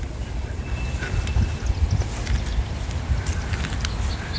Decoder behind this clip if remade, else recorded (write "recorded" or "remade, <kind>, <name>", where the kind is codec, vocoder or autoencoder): recorded